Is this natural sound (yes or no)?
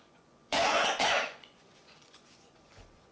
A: no